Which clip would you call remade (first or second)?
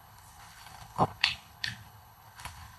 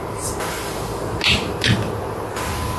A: first